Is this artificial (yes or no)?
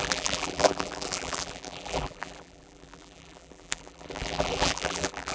yes